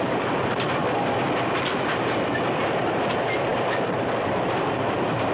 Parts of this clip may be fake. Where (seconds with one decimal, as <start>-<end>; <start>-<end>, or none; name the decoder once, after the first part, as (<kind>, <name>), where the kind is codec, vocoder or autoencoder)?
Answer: 0.0-0.8 (vocoder, BigVGAN v2); 1.6-5.3